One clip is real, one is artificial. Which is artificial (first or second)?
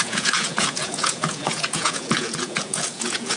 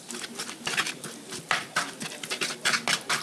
first